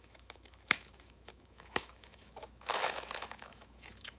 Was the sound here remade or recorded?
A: remade